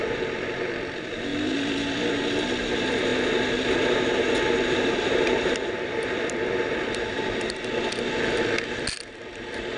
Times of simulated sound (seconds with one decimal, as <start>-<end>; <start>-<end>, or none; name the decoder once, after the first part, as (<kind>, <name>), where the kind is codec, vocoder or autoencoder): none